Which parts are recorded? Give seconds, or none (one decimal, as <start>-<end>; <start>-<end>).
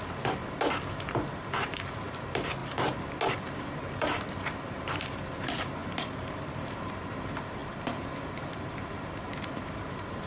0.4-0.9; 2.6-3.3